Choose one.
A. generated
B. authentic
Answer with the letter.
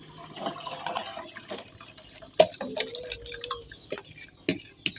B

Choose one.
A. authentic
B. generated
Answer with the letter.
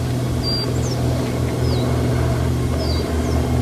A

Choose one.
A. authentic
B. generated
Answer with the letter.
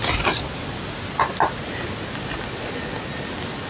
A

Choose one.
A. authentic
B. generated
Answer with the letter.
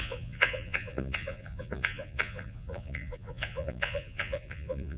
B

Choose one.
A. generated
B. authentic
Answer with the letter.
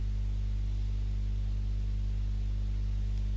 B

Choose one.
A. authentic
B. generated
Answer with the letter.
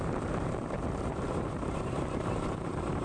B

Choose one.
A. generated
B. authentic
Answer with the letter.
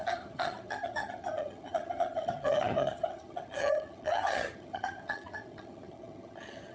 A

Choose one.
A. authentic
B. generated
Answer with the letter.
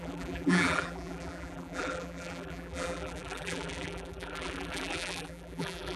B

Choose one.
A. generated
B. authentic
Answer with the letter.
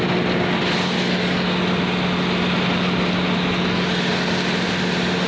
B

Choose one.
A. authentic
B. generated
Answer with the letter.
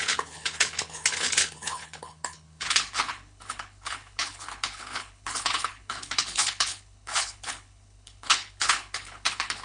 B